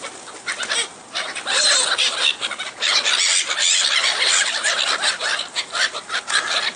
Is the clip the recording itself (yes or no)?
yes